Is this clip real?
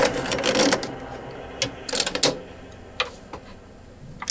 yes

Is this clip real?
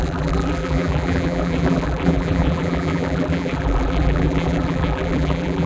no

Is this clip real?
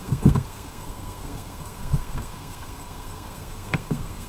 no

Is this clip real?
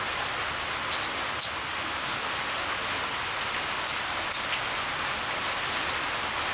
yes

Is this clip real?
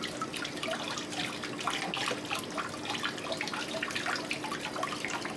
yes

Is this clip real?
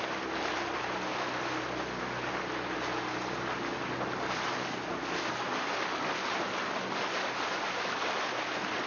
yes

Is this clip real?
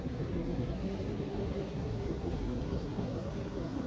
no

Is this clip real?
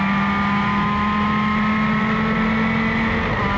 yes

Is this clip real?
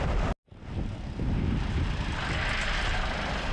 yes